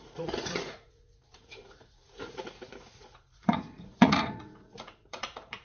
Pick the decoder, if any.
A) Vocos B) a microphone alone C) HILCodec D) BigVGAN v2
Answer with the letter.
A